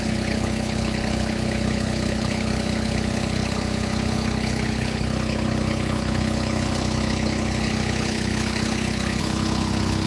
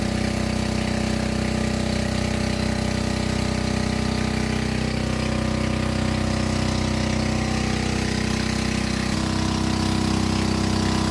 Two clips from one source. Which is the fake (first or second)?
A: first